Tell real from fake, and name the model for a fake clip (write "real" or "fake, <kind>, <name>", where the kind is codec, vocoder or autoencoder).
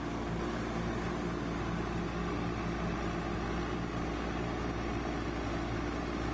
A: real